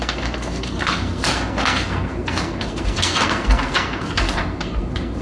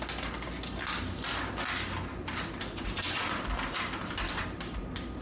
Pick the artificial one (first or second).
first